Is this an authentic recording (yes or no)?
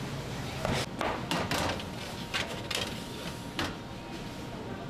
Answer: yes